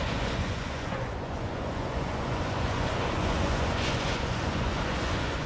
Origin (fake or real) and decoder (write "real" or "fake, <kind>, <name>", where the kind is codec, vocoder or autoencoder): fake, vocoder, Vocos